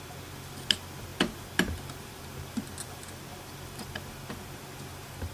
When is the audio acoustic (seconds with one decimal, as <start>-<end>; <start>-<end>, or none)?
0.0-5.3